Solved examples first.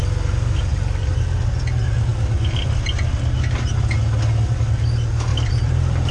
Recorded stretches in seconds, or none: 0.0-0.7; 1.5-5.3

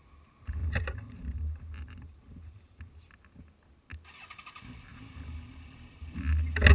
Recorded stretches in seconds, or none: 0.0-0.6; 2.8-6.7

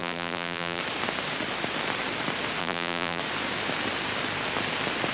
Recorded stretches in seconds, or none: 0.8-2.6; 3.2-5.1

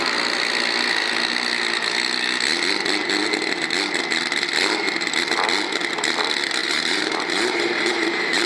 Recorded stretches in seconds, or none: 0.0-6.6

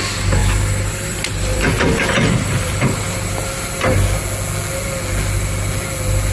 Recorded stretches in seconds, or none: 0.0-0.4; 4.2-6.3

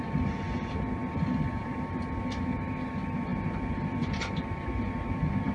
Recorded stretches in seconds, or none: 0.0-1.0; 1.9-5.5

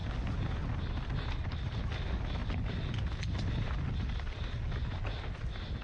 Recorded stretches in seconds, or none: 0.0-5.8

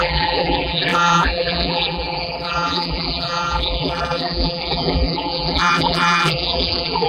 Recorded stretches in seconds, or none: none